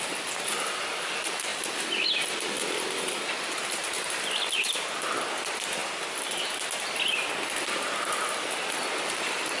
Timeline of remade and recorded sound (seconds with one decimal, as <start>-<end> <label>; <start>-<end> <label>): 0.0-9.6 recorded